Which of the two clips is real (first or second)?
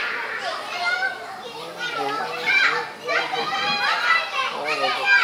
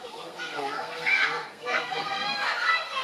first